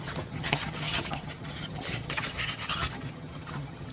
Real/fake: fake